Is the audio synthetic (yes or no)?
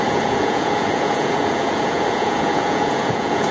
yes